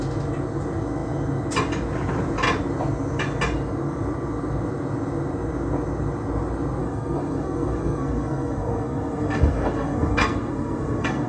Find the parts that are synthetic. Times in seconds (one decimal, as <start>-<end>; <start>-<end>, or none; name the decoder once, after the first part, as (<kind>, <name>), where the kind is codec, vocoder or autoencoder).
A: 6.8-11.3 (codec, SNAC)